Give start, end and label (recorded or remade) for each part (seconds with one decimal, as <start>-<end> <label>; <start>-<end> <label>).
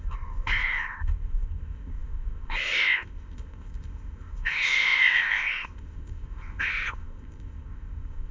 0.0-8.3 remade